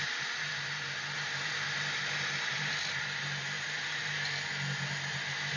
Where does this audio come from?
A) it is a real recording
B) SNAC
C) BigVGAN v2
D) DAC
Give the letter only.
A